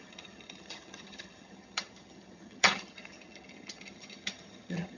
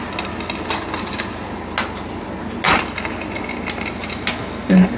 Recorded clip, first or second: second